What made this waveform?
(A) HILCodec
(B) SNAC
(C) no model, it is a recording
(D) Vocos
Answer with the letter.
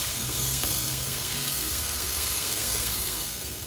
B